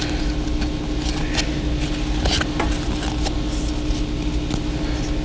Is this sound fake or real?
real